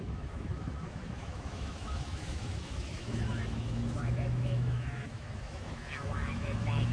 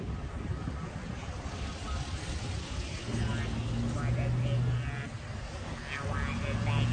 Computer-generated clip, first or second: first